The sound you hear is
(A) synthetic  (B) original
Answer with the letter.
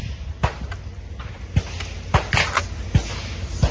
B